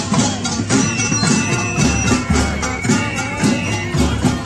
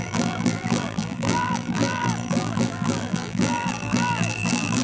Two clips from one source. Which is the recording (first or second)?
first